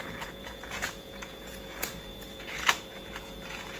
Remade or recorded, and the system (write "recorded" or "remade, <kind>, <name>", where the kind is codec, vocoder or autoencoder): remade, vocoder, Vocos